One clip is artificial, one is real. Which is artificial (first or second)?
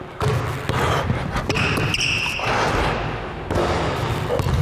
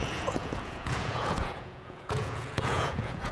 second